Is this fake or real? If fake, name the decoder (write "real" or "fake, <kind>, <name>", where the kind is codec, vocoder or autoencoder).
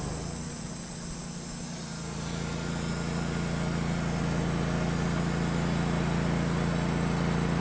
real